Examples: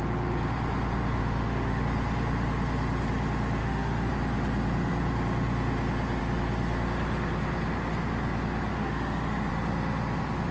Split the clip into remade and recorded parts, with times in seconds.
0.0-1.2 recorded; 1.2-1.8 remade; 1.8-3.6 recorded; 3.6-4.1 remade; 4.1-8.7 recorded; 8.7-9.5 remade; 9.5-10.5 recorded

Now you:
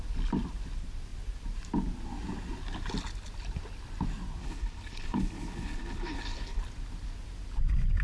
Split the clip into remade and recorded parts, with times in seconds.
0.0-4.4 recorded; 4.4-6.6 remade; 6.6-8.0 recorded